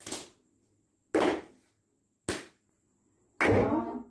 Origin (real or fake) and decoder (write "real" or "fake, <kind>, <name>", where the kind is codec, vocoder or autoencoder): real